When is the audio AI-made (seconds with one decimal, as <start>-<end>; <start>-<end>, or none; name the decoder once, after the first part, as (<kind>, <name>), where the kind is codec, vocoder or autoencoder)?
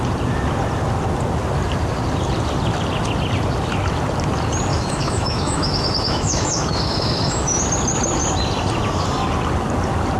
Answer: 4.7-7.6 (autoencoder, DAC-VAE)